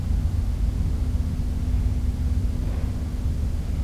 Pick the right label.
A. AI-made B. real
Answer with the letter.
B